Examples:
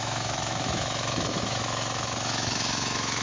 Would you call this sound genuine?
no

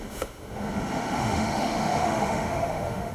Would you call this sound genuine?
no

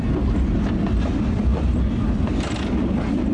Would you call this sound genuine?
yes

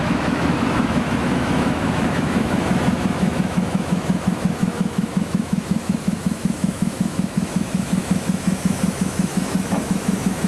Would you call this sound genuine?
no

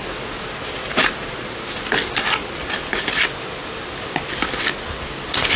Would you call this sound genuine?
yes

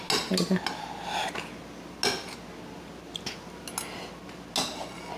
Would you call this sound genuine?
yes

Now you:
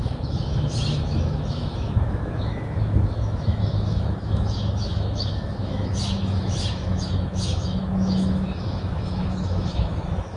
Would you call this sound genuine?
no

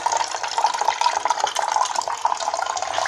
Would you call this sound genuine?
yes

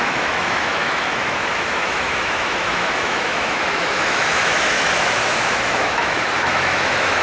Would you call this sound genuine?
no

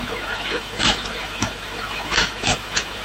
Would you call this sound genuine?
no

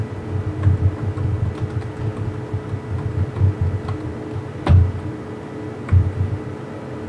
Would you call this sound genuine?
yes